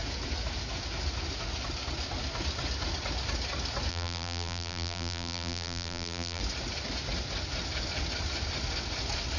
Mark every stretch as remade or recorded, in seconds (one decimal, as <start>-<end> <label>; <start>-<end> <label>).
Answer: 0.0-3.9 recorded; 3.9-6.4 remade; 6.4-9.4 recorded